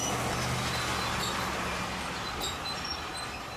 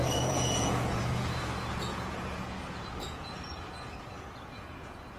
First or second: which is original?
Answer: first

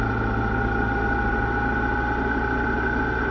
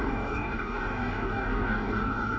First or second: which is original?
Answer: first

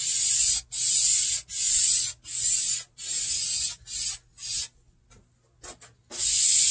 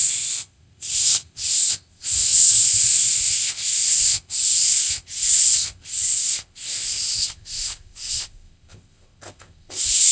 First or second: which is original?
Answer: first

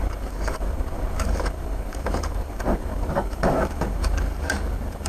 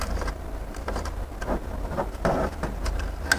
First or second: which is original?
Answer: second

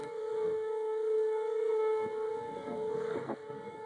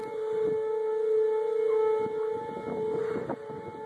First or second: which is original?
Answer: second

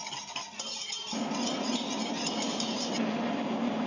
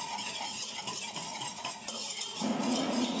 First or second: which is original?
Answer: first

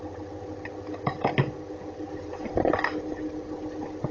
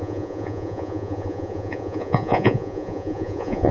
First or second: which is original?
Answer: first